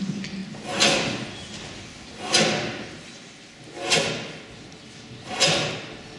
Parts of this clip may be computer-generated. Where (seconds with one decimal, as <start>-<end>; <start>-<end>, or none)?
none